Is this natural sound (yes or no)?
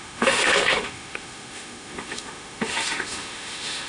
no